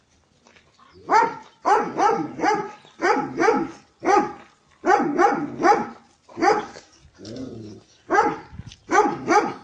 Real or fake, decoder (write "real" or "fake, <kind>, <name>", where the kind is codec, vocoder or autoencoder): real